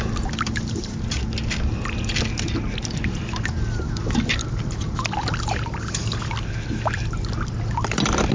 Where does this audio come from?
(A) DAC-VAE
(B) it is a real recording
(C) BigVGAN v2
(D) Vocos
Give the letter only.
B